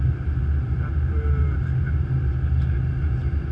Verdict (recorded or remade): recorded